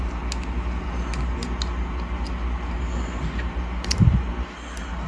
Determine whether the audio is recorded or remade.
recorded